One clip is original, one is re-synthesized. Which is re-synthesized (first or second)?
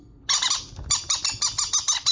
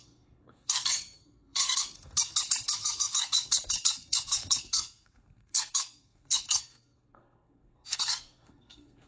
second